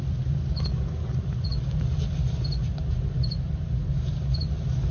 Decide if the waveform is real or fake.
real